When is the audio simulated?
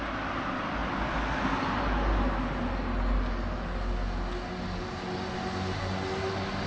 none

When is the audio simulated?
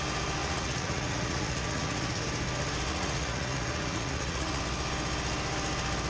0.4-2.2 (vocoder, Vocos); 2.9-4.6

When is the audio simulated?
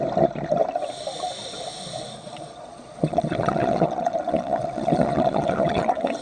2.2-6.2 (vocoder, Vocos)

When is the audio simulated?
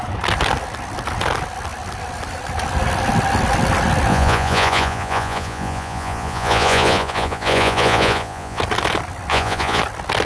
4.1-8.6 (vocoder, Vocos); 9.3-9.8